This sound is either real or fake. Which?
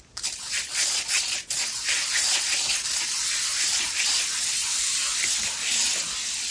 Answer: real